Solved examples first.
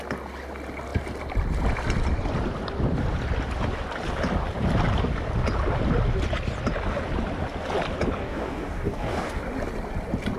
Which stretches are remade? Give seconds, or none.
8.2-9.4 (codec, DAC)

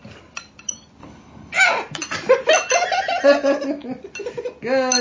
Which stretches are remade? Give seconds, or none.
1.0-1.6 (codec, HILCodec)